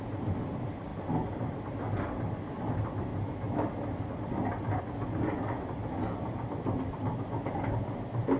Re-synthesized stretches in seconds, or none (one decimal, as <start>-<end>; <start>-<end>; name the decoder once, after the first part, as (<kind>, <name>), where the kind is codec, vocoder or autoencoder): none